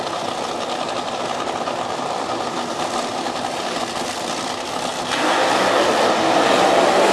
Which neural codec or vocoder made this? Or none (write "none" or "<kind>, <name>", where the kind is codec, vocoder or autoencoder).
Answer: none